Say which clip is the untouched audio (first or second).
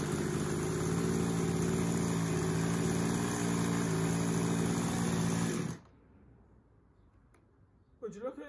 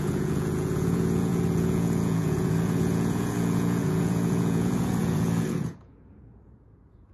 first